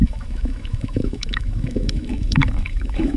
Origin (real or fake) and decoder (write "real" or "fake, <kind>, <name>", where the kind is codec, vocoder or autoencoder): fake, autoencoder, DAC-VAE